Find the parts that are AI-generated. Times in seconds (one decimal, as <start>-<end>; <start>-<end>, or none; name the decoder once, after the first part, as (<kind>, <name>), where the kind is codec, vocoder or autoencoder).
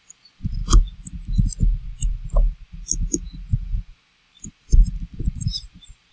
0.0-0.6 (vocoder, BigVGAN v2); 4.3-6.1